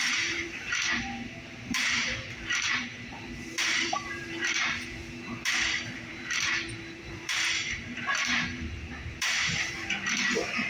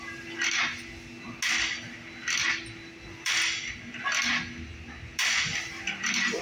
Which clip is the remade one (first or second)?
first